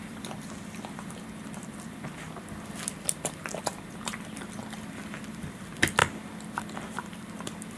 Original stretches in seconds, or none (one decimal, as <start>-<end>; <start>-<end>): 4.6-5.3; 6.0-6.6